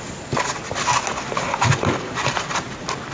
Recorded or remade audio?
recorded